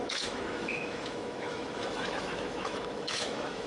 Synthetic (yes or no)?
yes